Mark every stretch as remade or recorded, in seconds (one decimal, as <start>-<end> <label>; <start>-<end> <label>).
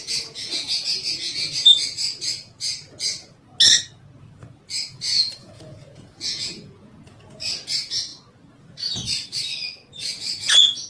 0.0-1.7 remade; 1.7-4.9 recorded; 4.9-8.1 remade; 8.1-9.9 recorded; 9.9-10.9 remade